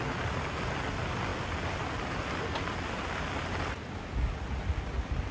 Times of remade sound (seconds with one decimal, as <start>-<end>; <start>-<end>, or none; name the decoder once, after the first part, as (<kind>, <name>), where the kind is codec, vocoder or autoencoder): none